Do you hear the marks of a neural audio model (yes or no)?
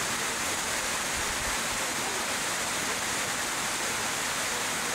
no